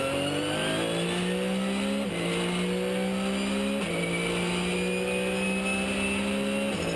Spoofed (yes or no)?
no